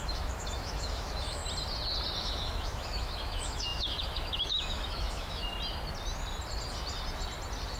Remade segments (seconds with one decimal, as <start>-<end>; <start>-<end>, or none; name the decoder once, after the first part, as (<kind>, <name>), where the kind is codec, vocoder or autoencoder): 0.0-1.4 (autoencoder, DAC-VAE); 2.2-5.5